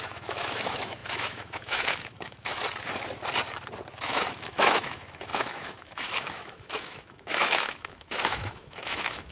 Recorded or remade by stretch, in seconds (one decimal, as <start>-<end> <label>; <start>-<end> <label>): 0.0-2.5 remade; 2.5-3.9 recorded; 3.9-9.3 remade

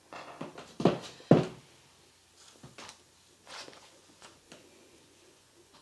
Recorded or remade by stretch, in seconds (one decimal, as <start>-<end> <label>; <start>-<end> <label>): 0.0-0.5 remade; 0.5-3.5 recorded; 3.5-5.8 remade

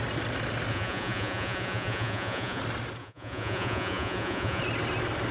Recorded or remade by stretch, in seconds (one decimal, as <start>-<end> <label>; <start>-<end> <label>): 0.0-0.7 recorded; 0.7-2.6 remade; 2.6-3.0 recorded; 3.0-4.6 remade; 4.6-5.3 recorded

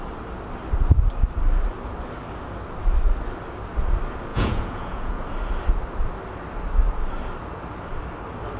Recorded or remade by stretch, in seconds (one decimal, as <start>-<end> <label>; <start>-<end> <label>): 0.0-4.3 recorded; 4.3-5.2 remade; 5.2-8.6 recorded

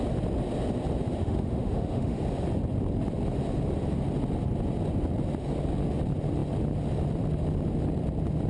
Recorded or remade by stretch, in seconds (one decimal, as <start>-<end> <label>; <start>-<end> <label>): 0.0-1.2 recorded; 1.2-2.2 remade; 2.2-8.5 recorded